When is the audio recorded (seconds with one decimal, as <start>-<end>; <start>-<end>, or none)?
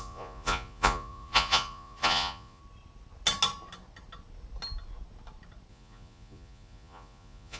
2.6-5.7